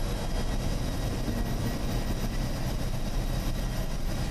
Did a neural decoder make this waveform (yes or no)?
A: no